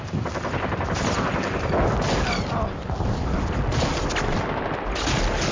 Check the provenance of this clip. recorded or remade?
recorded